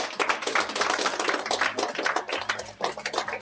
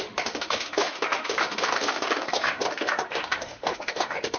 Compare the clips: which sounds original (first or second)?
first